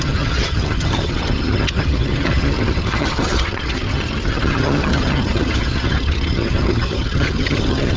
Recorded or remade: remade